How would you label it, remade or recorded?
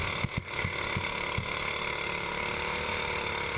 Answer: recorded